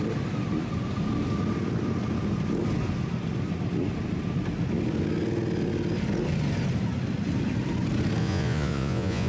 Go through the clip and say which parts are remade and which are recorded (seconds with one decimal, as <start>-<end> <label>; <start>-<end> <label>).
0.0-8.2 recorded; 8.2-9.3 remade